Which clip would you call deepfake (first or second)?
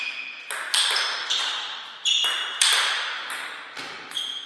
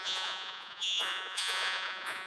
second